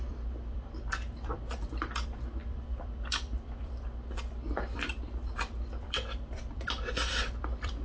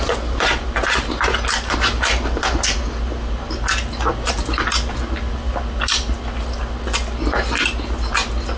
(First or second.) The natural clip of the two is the second